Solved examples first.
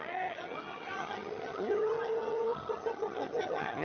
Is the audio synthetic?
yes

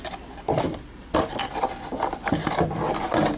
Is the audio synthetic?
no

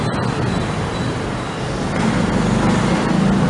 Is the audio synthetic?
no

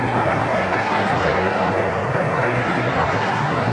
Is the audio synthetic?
yes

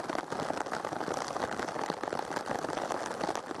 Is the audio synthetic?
no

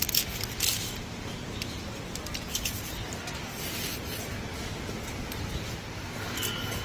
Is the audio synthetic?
no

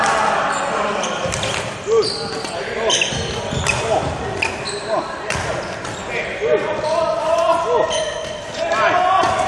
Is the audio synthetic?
yes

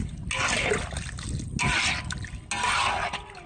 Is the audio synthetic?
no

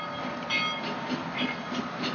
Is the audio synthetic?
no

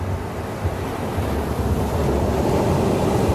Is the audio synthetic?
no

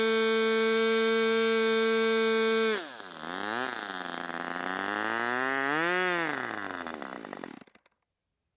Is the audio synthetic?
no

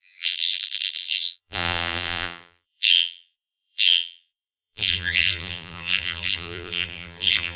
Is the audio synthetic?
yes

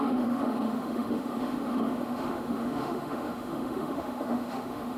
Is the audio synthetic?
yes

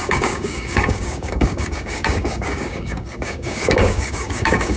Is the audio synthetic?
yes